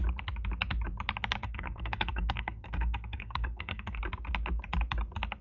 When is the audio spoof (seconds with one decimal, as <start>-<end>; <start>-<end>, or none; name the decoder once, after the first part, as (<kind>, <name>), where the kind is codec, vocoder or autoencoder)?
1.4-4.0 (codec, SNAC)